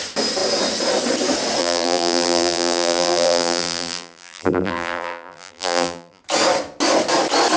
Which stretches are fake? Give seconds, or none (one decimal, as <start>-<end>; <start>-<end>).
1.6-6.2